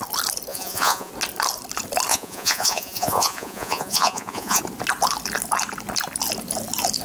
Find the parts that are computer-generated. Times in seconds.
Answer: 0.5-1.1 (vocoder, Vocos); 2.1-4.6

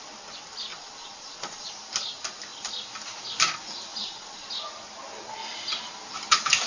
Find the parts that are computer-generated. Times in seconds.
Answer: 0.7-1.7 (vocoder, Vocos); 3.9-4.5

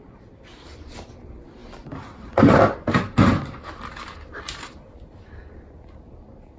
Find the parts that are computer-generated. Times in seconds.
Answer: none

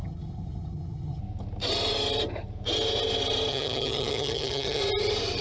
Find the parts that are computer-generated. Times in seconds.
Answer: 0.0-1.2 (vocoder, HiFi-GAN); 3.5-4.8